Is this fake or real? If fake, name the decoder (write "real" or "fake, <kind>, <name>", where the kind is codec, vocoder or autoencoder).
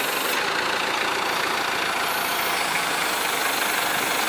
real